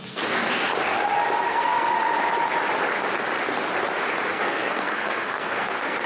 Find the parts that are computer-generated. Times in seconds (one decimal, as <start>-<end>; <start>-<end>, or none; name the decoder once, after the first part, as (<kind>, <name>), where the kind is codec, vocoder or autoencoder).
0.0-0.7 (codec, SNAC); 1.5-1.9; 4.3-6.1